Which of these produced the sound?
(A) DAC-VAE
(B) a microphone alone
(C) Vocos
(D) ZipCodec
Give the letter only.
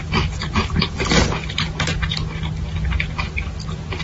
B